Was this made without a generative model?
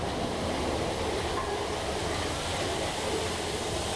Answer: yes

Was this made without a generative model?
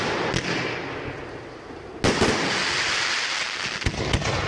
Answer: yes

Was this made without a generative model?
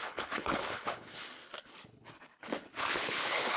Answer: no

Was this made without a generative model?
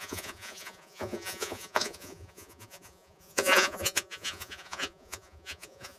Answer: no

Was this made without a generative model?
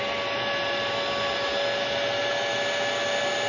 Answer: yes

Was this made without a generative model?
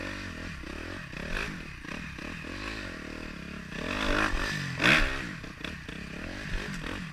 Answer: yes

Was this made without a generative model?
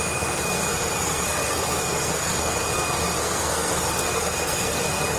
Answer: no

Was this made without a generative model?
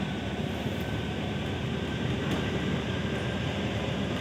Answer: no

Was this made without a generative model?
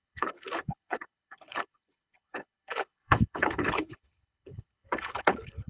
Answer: no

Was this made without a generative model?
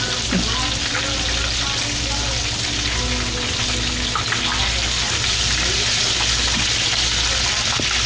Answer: yes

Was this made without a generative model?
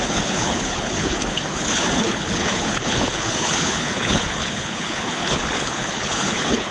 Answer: no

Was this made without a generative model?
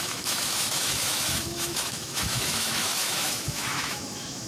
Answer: no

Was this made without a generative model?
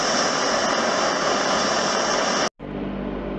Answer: yes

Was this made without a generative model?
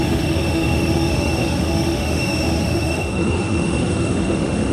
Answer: no